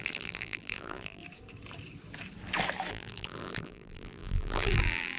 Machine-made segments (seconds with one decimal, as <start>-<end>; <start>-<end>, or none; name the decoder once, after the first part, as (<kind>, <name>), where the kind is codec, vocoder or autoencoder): 0.0-1.2 (vocoder, BigVGAN v2); 2.9-5.2